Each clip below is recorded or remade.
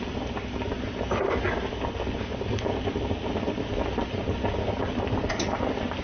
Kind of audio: recorded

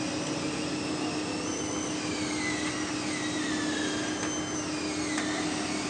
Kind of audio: recorded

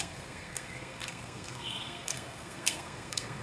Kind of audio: remade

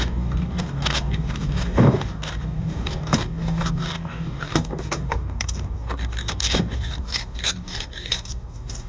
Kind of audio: remade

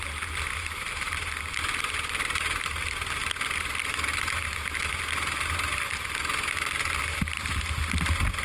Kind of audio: recorded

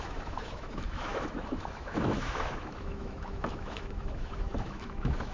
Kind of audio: remade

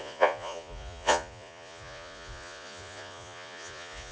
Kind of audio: remade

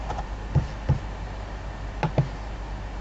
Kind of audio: recorded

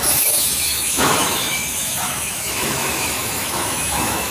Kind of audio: remade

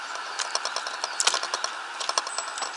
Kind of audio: recorded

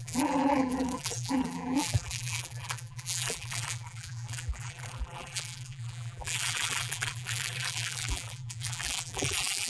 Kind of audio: remade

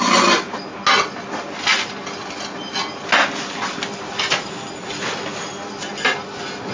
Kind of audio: recorded